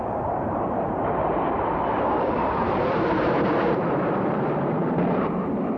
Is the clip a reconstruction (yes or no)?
yes